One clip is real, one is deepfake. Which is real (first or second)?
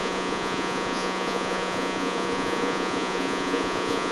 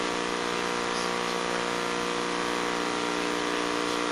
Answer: second